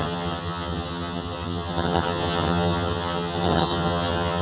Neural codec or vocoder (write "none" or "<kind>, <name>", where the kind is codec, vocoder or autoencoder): vocoder, HiFi-GAN